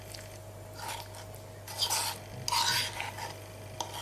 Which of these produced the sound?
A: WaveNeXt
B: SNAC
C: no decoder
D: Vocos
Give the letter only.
C